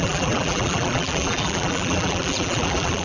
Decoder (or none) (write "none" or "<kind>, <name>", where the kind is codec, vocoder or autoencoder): vocoder, BigVGAN v2